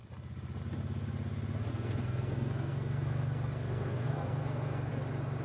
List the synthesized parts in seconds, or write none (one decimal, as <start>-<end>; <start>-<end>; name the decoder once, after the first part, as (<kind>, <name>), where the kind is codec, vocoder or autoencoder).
1.7-4.9 (codec, SNAC)